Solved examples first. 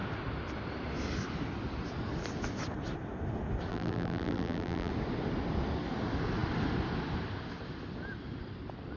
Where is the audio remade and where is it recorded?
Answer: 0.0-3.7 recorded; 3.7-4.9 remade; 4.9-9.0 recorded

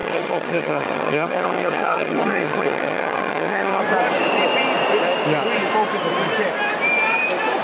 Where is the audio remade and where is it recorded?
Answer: 0.0-3.8 remade; 3.8-7.6 recorded

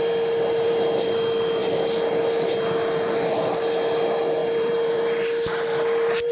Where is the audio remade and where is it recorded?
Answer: 0.0-1.6 remade; 1.6-2.1 recorded; 2.1-6.3 remade

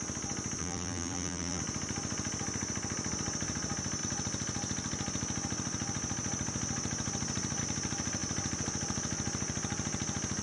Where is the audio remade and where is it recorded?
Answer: 0.0-0.6 recorded; 0.6-1.6 remade; 1.6-10.4 recorded

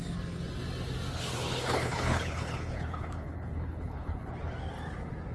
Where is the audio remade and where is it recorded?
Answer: 0.0-1.1 recorded; 1.1-4.3 remade; 4.3-5.3 recorded

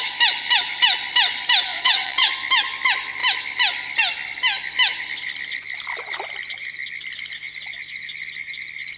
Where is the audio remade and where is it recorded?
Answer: 0.0-1.7 recorded; 1.7-2.3 remade; 2.3-9.0 recorded